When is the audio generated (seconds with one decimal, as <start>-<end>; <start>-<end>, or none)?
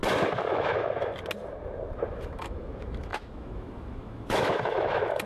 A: 0.5-1.1; 2.1-5.3